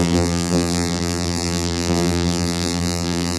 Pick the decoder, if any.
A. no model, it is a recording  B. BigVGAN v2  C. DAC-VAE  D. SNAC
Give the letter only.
B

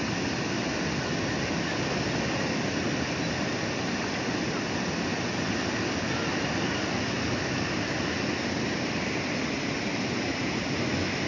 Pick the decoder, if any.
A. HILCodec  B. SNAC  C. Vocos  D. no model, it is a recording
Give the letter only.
D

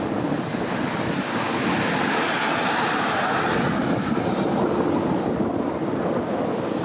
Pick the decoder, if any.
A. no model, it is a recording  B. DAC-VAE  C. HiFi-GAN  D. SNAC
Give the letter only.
A